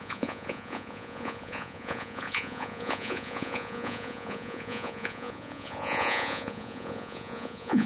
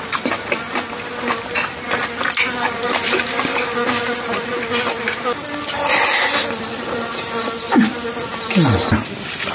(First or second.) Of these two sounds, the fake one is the first